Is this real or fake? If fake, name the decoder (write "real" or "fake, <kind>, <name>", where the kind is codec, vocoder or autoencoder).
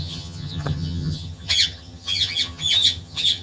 fake, vocoder, HiFi-GAN